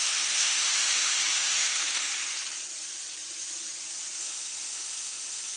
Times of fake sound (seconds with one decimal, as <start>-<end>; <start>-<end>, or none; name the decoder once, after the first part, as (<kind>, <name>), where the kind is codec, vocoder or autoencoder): 0.0-2.1 (autoencoder, DAC-VAE); 4.2-5.6

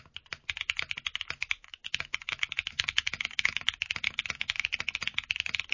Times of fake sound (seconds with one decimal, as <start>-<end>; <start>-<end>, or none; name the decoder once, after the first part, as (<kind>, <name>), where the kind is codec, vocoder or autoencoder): 1.4-3.6 (autoencoder, DAC-VAE)

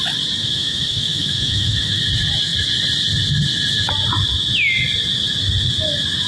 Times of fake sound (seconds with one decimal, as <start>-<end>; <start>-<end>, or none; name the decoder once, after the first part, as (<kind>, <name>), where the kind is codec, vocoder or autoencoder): 0.4-2.0 (autoencoder, DAC-VAE)

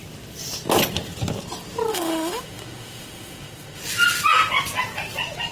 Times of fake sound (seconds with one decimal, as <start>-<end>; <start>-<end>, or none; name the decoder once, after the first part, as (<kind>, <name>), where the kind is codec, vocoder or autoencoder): 1.9-3.8 (autoencoder, DAC-VAE)

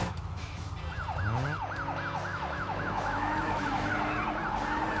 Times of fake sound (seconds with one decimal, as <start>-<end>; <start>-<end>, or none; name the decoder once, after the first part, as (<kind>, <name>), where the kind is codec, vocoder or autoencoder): 0.0-0.7 (autoencoder, DAC-VAE); 2.3-3.9

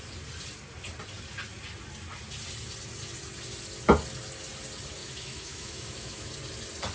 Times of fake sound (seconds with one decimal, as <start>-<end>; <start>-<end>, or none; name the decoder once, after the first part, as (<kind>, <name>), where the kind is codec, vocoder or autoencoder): 5.0-6.3 (autoencoder, DAC-VAE)